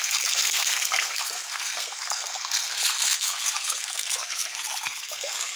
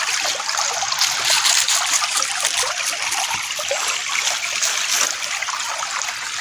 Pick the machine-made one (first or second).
first